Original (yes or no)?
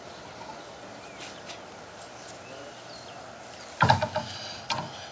yes